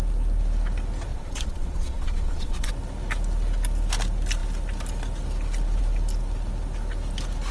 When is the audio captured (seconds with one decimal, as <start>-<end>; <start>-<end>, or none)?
0.0-1.1; 2.7-7.5